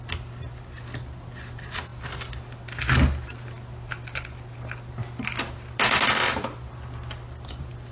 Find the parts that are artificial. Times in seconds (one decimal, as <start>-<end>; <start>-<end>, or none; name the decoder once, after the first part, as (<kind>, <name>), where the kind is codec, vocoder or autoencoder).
none